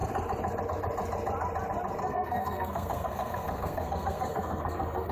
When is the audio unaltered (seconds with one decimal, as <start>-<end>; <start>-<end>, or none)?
0.0-2.0